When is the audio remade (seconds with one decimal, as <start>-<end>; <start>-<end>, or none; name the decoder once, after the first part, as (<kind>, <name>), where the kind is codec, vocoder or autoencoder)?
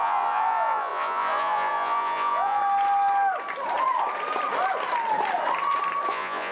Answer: 0.0-2.6 (vocoder, Vocos); 6.1-6.5